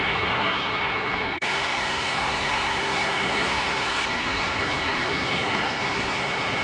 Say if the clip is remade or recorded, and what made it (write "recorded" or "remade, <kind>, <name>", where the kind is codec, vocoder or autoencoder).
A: remade, codec, SNAC